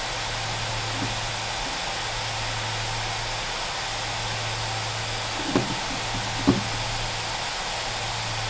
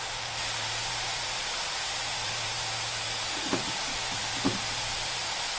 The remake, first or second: second